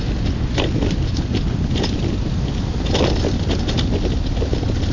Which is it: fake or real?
real